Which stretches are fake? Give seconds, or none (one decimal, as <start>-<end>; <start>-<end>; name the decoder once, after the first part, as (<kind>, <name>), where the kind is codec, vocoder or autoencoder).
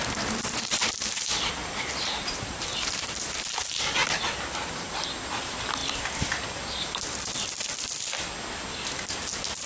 0.0-5.0 (vocoder, BigVGAN v2)